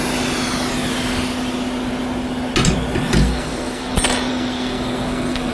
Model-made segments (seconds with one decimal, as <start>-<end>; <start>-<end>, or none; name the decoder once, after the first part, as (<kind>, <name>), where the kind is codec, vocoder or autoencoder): 3.2-3.9 (codec, SNAC); 4.3-5.5